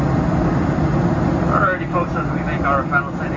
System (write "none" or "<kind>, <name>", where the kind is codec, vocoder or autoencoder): none